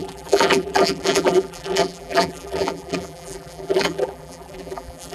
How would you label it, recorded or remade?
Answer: remade